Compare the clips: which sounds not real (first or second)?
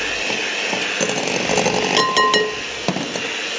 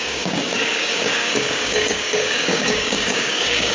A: second